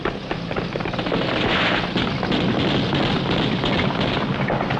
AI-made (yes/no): no